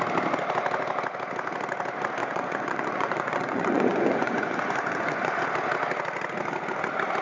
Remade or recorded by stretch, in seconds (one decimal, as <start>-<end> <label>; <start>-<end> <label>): 0.0-2.2 recorded; 2.2-5.4 remade; 5.4-7.2 recorded